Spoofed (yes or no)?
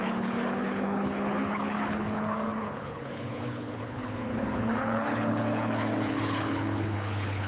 yes